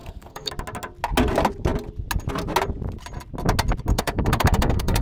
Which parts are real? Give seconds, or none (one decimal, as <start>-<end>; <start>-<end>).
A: 0.5-3.9